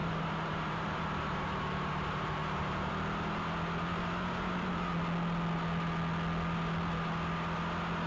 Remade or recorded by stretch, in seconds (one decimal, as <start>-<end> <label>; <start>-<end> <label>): 0.0-2.9 remade; 2.9-3.9 recorded; 3.9-4.9 remade; 4.9-8.1 recorded